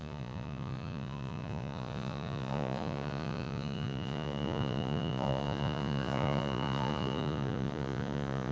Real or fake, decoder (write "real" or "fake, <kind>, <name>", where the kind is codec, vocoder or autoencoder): fake, vocoder, Vocos